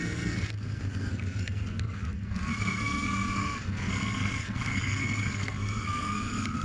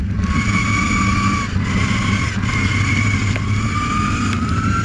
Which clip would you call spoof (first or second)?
first